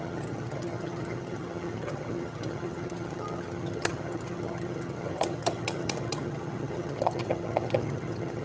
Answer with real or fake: fake